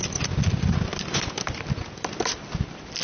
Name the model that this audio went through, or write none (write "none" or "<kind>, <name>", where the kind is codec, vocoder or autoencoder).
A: none